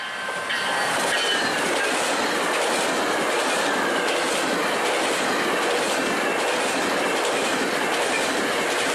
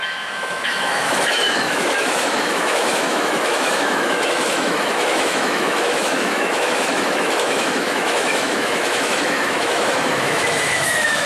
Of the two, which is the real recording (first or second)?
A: first